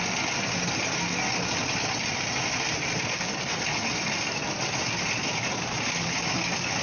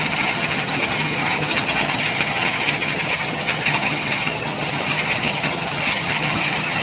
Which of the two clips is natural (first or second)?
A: first